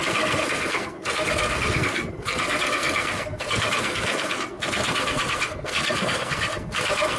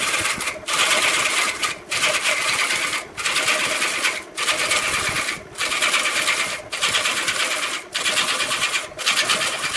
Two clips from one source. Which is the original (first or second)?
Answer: second